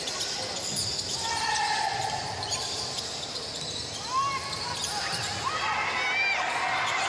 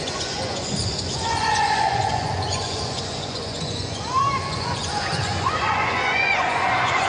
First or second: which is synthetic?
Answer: second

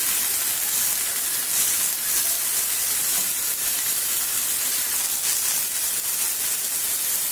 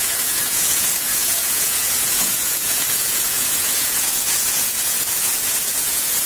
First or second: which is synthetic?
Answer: second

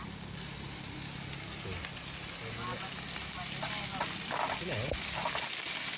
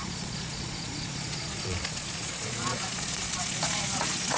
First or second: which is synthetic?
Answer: second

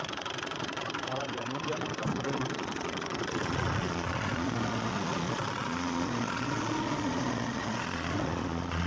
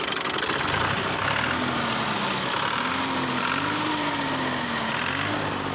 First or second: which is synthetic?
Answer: first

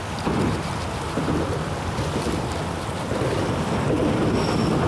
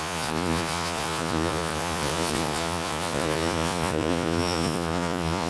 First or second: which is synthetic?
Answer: second